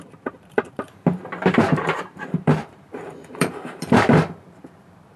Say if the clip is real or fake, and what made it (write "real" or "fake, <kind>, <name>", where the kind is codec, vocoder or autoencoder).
fake, vocoder, BigVGAN v2